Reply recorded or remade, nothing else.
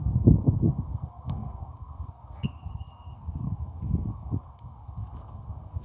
remade